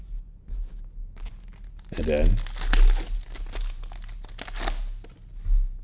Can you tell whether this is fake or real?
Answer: real